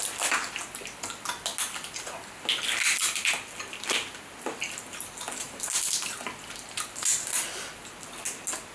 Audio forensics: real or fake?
real